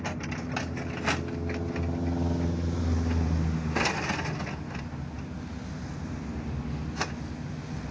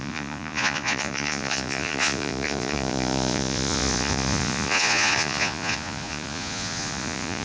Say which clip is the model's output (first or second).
second